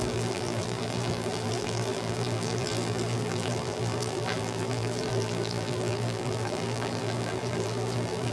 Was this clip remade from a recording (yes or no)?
yes